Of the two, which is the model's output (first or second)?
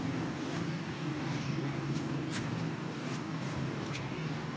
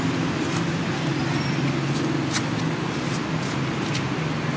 first